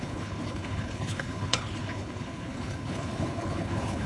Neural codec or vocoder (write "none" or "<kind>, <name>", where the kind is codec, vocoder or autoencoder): codec, HILCodec